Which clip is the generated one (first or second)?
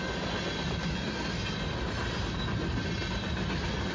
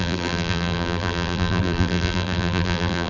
second